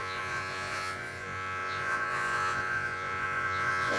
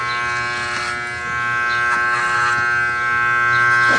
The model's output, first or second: first